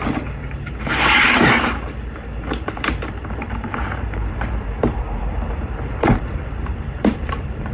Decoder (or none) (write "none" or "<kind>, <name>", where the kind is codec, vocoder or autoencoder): vocoder, BigVGAN v2